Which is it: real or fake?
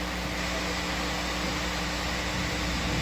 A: real